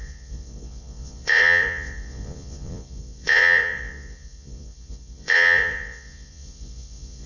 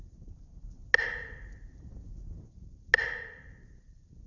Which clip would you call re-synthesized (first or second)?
first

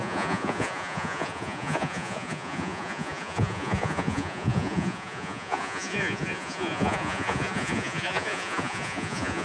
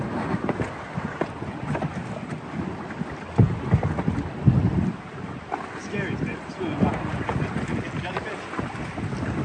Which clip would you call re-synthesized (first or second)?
first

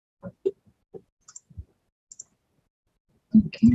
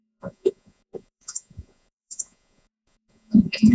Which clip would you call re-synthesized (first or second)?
second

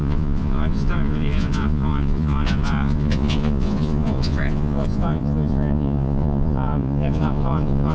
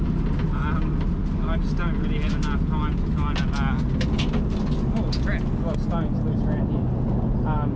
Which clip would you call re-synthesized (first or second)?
first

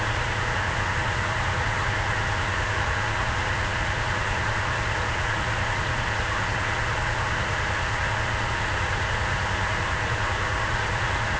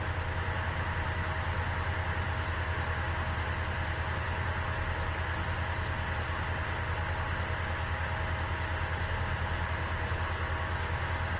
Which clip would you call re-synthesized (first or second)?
first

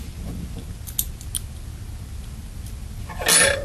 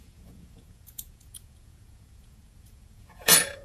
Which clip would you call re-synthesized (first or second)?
second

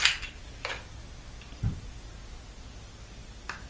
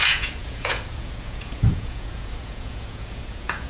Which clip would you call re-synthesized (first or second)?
second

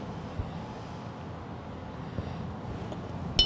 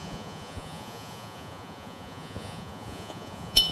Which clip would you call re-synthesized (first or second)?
second